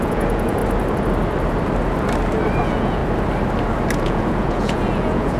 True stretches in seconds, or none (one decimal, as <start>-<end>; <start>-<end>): 0.6-2.6; 3.0-4.0